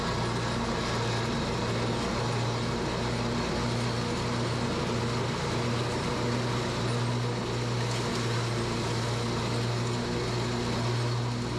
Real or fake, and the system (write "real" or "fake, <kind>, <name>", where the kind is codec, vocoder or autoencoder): real